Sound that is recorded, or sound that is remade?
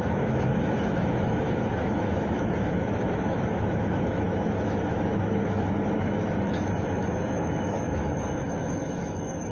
remade